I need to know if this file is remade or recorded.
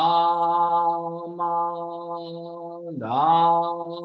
recorded